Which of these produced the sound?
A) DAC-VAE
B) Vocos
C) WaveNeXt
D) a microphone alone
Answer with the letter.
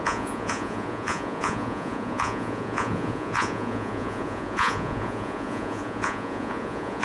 B